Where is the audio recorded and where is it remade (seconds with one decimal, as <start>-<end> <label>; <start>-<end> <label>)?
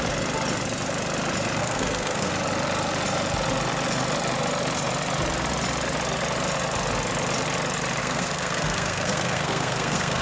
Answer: 0.0-1.6 recorded; 1.6-2.3 remade; 2.3-8.0 recorded; 8.0-10.2 remade